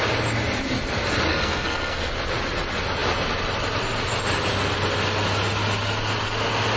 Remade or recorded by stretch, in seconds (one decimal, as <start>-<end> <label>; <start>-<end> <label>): 0.0-1.3 recorded; 1.3-2.1 remade; 2.1-6.8 recorded